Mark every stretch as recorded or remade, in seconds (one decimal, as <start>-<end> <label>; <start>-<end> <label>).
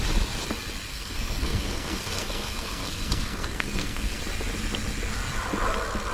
0.0-0.9 recorded; 0.9-4.2 remade; 4.2-6.1 recorded